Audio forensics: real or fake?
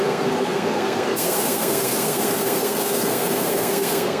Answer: fake